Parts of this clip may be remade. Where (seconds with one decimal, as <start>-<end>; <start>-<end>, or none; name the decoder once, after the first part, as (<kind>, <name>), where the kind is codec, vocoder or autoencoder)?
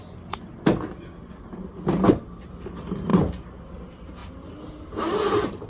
none